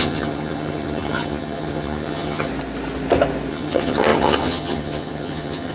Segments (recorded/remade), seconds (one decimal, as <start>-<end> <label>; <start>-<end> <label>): 0.0-2.5 remade; 2.5-3.5 recorded; 3.5-5.7 remade